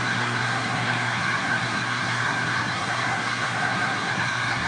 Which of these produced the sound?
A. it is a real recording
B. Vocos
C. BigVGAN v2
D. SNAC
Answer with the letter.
D